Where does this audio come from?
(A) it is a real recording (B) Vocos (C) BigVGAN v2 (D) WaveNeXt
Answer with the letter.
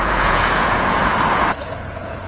B